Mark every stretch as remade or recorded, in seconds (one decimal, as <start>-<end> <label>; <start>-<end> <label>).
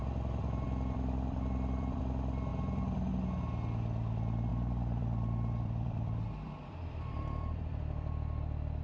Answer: 0.0-0.4 recorded; 0.4-2.0 remade; 2.0-2.5 recorded; 2.5-3.1 remade; 3.1-4.5 recorded; 4.5-8.4 remade; 8.4-8.8 recorded